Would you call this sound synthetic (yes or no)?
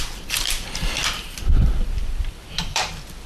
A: yes